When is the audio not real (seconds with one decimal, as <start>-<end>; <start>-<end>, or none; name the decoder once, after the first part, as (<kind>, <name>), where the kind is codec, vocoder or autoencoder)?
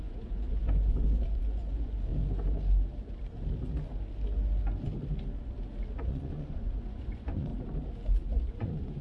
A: 0.0-2.1 (vocoder, Vocos); 6.1-7.5; 8.5-9.0